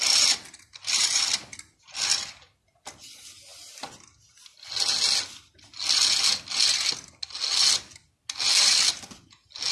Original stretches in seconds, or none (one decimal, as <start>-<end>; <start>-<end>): 0.0-9.7